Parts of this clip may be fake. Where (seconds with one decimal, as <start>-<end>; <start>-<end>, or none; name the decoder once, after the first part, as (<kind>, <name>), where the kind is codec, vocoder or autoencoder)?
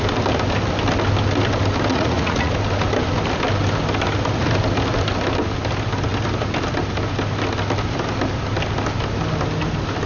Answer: 1.9-2.5 (vocoder, Vocos)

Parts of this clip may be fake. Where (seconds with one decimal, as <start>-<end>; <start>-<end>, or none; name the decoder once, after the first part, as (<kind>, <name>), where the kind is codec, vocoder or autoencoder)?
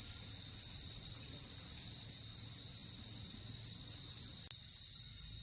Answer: none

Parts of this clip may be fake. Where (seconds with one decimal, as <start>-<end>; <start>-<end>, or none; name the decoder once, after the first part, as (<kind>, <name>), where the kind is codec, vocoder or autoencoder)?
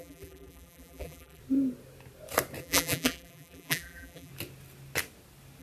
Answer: 0.0-1.4 (vocoder, BigVGAN v2); 2.6-4.3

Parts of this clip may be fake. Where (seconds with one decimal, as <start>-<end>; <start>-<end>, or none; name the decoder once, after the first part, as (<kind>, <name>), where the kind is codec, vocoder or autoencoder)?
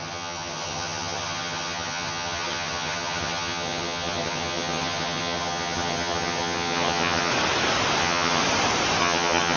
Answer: 0.0-7.3 (vocoder, HiFi-GAN); 8.0-8.4; 9.0-9.6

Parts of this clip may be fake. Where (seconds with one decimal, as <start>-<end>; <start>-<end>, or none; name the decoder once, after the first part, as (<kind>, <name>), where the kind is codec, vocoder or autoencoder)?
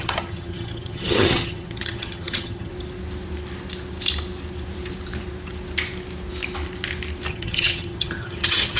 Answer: 0.0-2.7 (vocoder, HiFi-GAN); 7.3-8.8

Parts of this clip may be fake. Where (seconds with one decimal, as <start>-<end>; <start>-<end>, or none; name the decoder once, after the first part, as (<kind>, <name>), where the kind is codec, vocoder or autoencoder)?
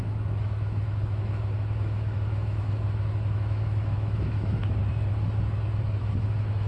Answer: 0.0-4.6 (autoencoder, DAC-VAE); 6.0-6.7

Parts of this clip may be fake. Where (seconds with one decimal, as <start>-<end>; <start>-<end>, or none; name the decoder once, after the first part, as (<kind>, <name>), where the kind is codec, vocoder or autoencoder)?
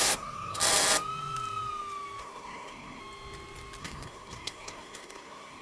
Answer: 0.0-0.6 (codec, SNAC); 2.2-3.0; 3.8-5.6